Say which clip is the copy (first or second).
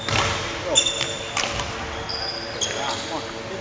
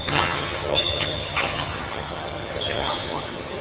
second